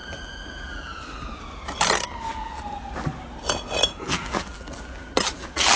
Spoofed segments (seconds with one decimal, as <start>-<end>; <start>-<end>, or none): 0.0-1.4; 2.3-2.8; 3.9-5.8